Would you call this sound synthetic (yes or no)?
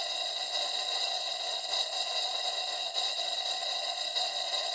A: yes